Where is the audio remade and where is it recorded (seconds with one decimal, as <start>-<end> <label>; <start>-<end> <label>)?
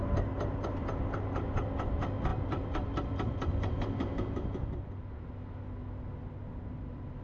0.0-7.2 recorded